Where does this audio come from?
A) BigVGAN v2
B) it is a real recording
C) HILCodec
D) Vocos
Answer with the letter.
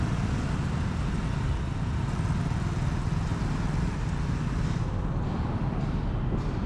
B